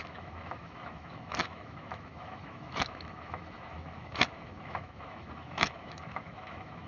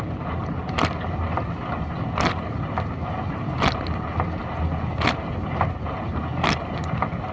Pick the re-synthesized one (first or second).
first